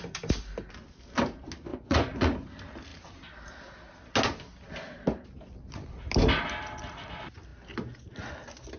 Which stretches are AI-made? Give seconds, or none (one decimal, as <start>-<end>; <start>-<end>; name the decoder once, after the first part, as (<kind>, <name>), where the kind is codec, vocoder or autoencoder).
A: 1.7-2.5 (vocoder, Vocos)